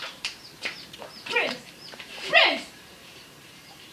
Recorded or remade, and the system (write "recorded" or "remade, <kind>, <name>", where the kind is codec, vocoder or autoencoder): remade, vocoder, BigVGAN v2